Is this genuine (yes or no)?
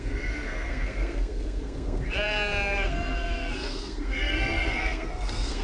no